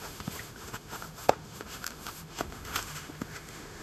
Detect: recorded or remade remade